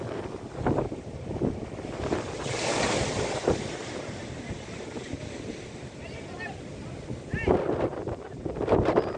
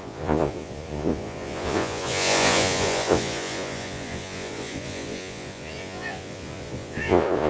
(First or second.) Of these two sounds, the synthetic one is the second